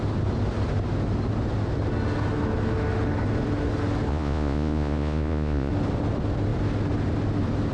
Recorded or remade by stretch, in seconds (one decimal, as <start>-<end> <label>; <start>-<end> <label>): 0.0-4.1 recorded; 4.1-5.7 remade; 5.7-7.7 recorded